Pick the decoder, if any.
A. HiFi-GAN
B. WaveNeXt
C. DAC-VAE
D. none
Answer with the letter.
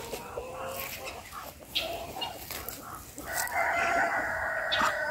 D